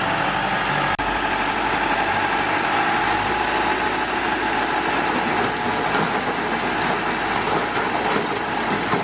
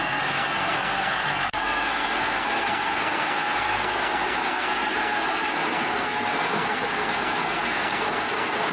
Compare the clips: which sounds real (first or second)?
first